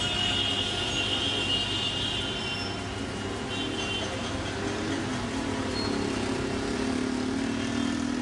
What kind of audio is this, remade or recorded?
recorded